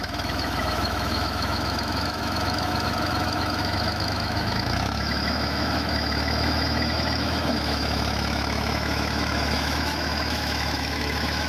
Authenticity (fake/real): fake